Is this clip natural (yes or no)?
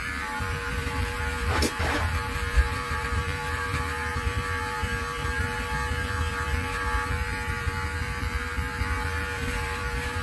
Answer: no